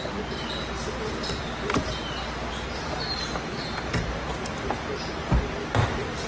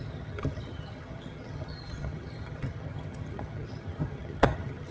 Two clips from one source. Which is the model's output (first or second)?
second